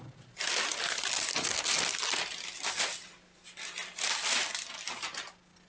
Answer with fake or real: real